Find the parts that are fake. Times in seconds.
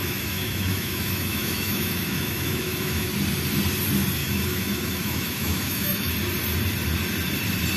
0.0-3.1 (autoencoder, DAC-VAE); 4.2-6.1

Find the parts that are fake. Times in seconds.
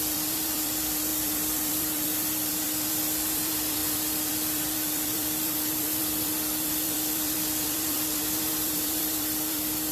0.0-9.9 (vocoder, BigVGAN v2)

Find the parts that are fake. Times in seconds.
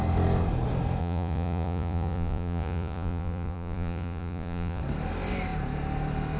1.0-4.8 (vocoder, Vocos)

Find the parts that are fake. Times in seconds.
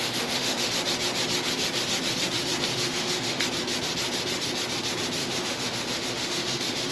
0.0-0.7 (autoencoder, DAC-VAE); 2.7-3.4; 5.2-6.9